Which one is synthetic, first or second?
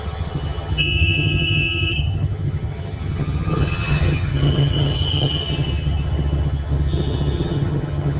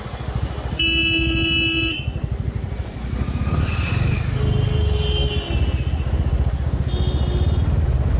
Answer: first